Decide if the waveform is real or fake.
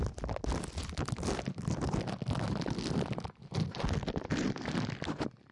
real